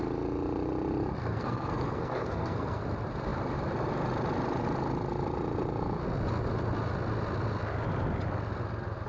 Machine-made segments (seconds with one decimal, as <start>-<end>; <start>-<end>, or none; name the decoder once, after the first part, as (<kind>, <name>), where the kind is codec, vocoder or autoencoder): 1.2-2.8 (codec, SNAC)